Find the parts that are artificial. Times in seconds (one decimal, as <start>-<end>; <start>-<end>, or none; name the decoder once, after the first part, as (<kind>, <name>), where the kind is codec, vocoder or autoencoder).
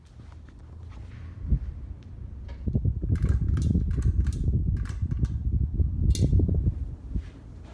none